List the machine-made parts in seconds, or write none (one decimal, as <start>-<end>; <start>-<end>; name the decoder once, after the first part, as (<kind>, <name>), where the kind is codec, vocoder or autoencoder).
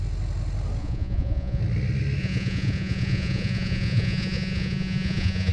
0.8-1.6 (vocoder, Vocos); 2.2-5.5